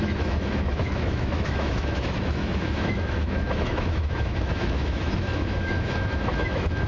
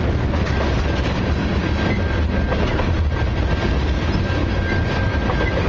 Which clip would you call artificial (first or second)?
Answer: first